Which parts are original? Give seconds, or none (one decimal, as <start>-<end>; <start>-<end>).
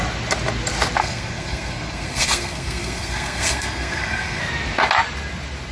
0.0-1.0; 4.4-5.7